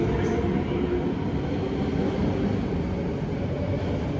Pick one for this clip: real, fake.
real